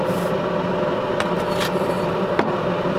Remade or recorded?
recorded